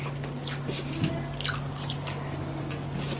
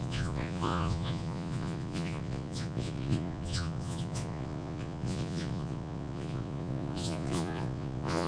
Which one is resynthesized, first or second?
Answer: second